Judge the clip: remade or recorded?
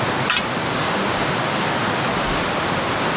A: recorded